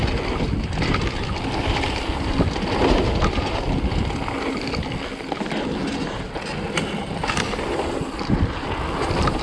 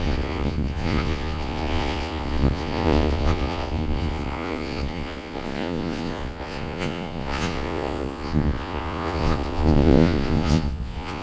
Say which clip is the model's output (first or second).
second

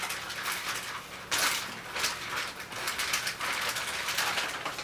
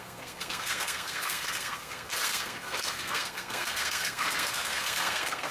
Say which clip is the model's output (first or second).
second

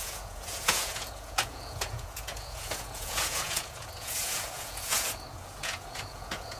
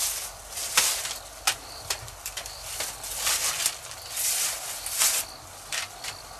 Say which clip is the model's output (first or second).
first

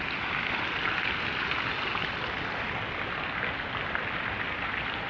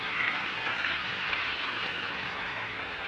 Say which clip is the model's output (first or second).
second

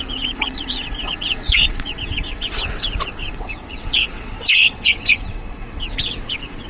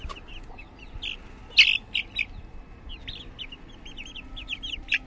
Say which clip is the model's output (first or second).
first